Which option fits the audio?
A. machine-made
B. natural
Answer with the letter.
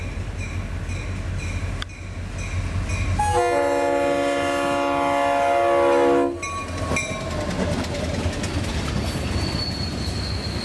B